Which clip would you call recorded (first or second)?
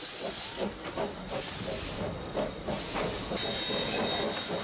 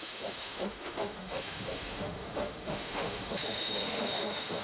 first